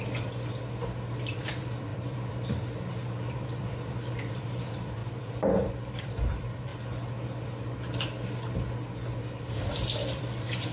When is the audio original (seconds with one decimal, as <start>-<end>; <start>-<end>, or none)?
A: 0.0-1.3; 6.7-9.2